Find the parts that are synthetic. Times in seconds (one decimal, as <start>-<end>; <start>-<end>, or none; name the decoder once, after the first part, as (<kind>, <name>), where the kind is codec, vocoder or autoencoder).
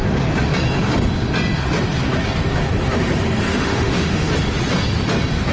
3.5-4.3 (autoencoder, DAC-VAE)